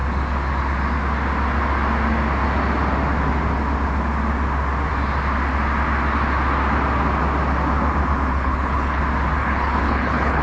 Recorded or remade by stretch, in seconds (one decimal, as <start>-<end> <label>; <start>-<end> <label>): 0.0-8.3 recorded; 8.3-9.0 remade; 9.0-9.4 recorded; 9.4-10.4 remade